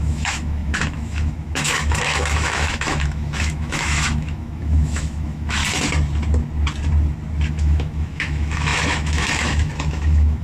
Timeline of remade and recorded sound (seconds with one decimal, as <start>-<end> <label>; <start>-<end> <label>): 0.0-5.6 remade; 5.6-7.5 recorded; 7.5-10.4 remade